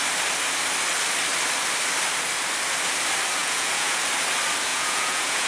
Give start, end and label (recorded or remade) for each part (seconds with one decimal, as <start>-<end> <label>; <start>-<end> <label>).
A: 0.0-3.4 recorded; 3.4-4.0 remade; 4.0-4.7 recorded; 4.7-5.5 remade